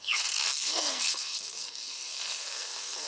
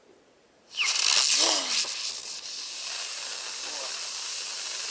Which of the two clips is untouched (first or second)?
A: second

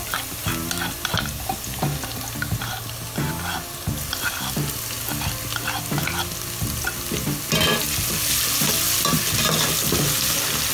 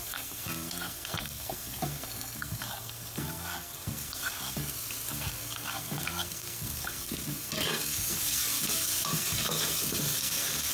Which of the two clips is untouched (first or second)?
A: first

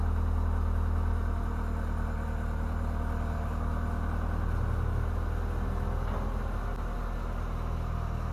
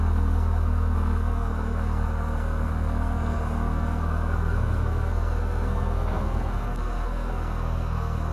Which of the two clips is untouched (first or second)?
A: first